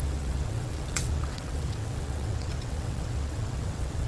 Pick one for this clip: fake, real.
fake